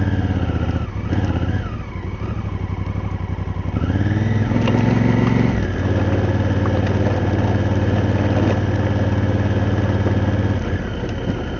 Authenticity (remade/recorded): recorded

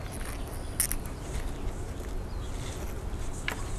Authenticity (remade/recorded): recorded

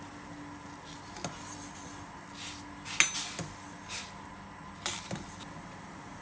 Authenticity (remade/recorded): recorded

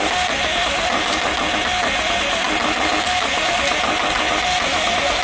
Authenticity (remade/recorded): recorded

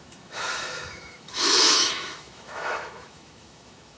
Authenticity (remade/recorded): remade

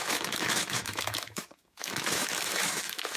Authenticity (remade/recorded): remade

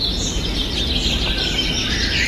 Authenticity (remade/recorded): recorded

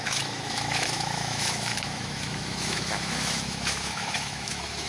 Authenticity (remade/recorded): remade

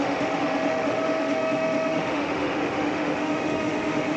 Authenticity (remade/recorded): remade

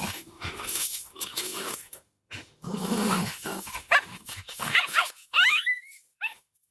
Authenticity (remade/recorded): remade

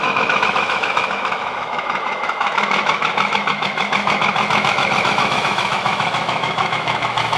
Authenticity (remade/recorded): remade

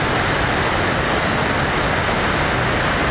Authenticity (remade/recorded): recorded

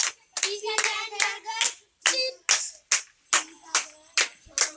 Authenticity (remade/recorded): recorded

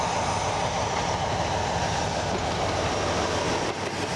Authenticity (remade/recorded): recorded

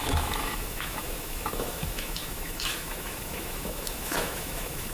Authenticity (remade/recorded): remade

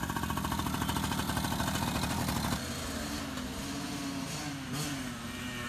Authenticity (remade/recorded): recorded